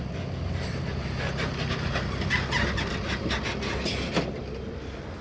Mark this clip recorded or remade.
recorded